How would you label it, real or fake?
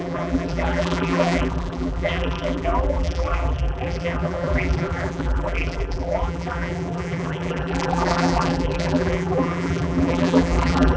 fake